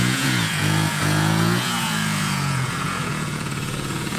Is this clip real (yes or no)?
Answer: no